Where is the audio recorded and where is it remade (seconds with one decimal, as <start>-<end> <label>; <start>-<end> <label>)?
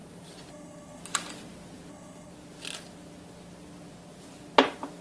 0.0-0.5 recorded; 0.5-1.0 remade; 1.0-1.9 recorded; 1.9-2.3 remade; 2.3-5.0 recorded